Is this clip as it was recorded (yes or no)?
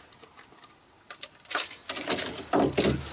no